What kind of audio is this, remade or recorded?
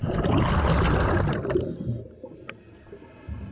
recorded